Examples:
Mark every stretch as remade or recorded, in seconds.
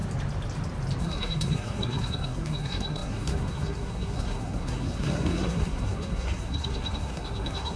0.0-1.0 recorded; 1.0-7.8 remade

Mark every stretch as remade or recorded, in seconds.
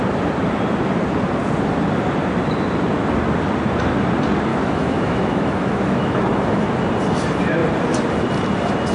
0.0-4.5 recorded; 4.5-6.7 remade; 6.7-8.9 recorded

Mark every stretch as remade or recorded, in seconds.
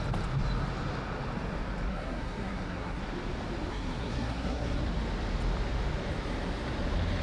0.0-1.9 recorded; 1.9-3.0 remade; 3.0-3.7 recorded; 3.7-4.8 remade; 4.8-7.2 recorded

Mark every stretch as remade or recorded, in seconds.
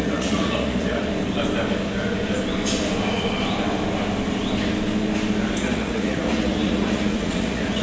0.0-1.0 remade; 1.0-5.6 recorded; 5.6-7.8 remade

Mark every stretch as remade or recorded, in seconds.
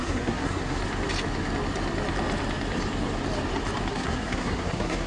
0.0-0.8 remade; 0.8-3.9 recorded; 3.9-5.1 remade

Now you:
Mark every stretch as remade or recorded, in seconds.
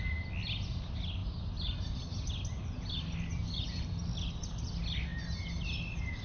0.0-1.2 recorded; 1.2-2.3 remade; 2.3-6.2 recorded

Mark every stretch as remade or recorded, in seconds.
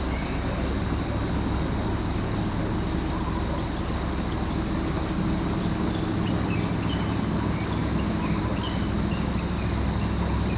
0.0-10.6 recorded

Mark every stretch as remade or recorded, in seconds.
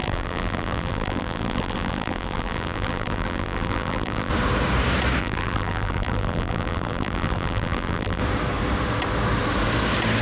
0.0-4.3 remade; 4.3-5.2 recorded; 5.2-8.2 remade; 8.2-10.2 recorded